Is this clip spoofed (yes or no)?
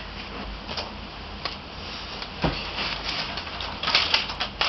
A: no